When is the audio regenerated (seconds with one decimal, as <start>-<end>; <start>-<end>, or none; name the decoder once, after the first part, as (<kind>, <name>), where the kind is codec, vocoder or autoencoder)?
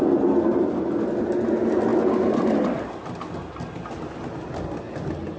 none